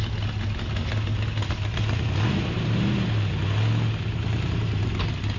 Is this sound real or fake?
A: real